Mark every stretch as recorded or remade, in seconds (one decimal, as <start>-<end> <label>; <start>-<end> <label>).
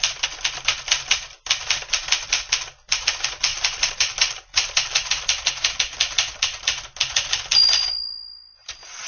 0.0-3.5 recorded; 3.5-5.1 remade; 5.1-8.6 recorded; 8.6-9.1 remade